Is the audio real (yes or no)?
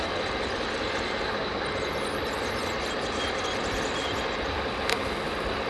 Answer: yes